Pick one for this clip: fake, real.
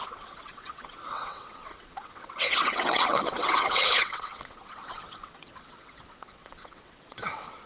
fake